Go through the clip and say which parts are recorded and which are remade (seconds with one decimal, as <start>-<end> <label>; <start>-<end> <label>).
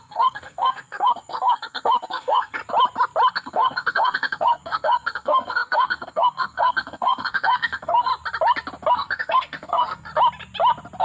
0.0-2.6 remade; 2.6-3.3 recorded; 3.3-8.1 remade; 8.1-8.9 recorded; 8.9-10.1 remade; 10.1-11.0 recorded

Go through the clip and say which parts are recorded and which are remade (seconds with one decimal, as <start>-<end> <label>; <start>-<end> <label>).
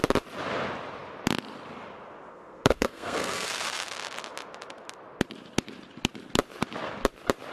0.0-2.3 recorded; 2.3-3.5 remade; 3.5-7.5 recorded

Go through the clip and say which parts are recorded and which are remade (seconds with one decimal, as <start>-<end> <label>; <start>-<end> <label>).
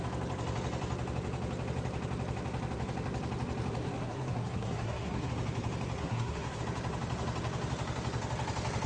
0.0-3.8 recorded; 3.8-5.3 remade; 5.3-6.0 recorded; 6.0-6.6 remade; 6.6-8.9 recorded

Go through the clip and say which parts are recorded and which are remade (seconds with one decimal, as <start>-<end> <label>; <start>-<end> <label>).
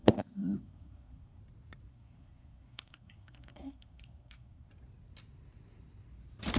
0.0-1.4 remade; 1.4-1.9 recorded; 1.9-4.7 remade; 4.7-6.6 recorded